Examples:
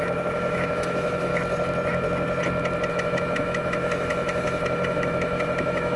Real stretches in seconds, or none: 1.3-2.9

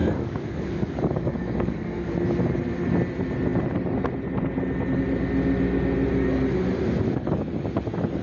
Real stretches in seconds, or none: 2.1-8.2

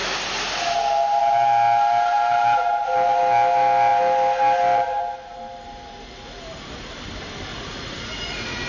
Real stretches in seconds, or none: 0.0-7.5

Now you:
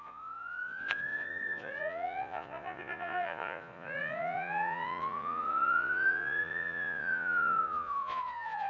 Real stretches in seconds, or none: none

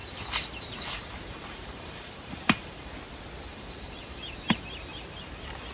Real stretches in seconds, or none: 2.9-3.5; 4.6-5.7

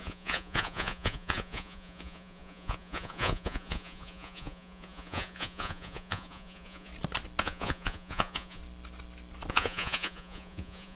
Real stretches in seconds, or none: 6.9-7.4; 8.6-9.5

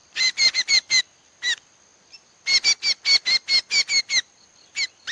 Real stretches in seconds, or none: 1.0-5.1

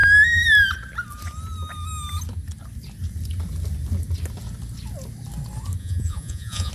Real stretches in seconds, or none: 0.0-5.8